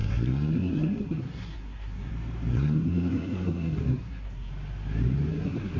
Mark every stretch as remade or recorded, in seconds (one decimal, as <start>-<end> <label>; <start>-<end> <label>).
0.0-2.1 remade; 2.1-2.5 recorded; 2.5-4.5 remade; 4.5-5.3 recorded; 5.3-5.8 remade